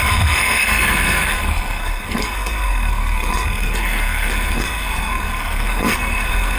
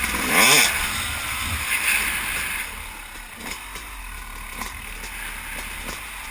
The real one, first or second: second